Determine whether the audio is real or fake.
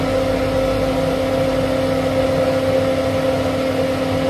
real